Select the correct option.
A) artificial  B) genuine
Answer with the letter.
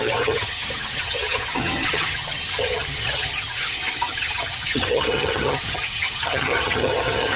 A